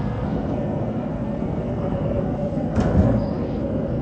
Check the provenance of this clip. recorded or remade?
remade